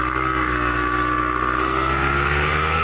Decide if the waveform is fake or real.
fake